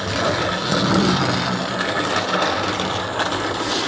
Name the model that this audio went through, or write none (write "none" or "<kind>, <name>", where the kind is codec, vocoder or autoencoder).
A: none